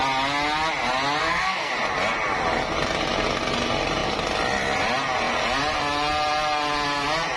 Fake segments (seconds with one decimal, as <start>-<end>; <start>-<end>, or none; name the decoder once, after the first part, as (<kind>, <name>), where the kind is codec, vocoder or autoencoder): 1.2-1.7 (codec, SNAC)